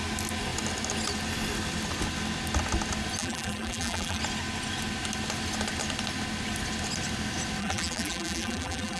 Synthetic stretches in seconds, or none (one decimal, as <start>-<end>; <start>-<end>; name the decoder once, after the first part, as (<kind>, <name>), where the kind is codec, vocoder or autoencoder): 3.2-4.2 (vocoder, BigVGAN v2); 7.6-9.0